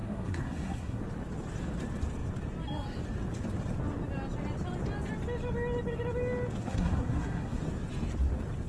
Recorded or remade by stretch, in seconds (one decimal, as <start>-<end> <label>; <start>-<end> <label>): 0.0-1.0 remade; 1.0-6.6 recorded; 6.6-7.6 remade; 7.6-8.7 recorded